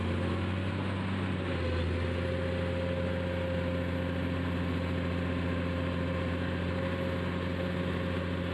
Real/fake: real